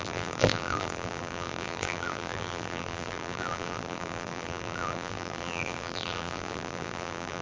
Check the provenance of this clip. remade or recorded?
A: remade